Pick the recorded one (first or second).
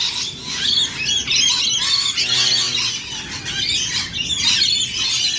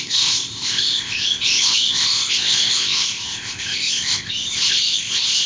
first